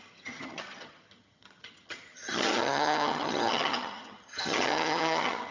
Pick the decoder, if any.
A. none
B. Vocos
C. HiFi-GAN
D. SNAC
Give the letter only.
C